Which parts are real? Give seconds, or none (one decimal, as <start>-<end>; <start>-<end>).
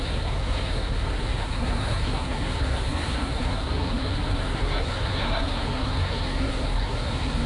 none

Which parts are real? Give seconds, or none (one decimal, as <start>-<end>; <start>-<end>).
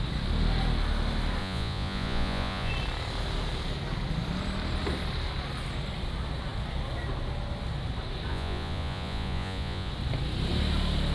0.0-1.4; 2.7-8.3; 9.9-11.1